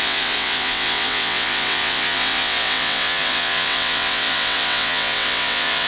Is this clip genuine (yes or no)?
no